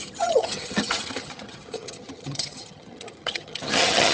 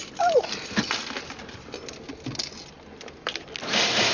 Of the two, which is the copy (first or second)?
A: first